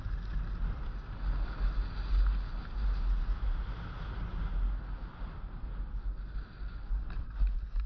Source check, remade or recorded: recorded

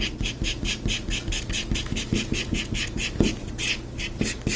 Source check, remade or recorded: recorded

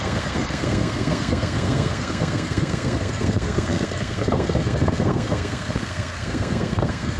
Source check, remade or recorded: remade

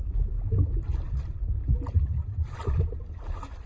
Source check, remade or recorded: recorded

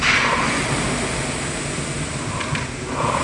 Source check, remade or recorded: recorded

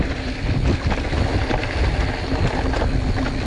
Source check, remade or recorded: recorded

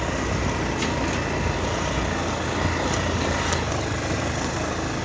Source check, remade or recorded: recorded